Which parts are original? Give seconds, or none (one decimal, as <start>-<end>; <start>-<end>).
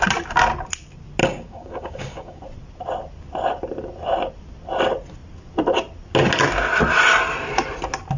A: 0.0-1.2; 2.4-8.2